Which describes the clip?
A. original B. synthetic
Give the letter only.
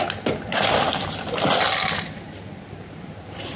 A